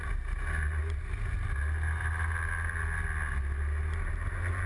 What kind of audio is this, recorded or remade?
recorded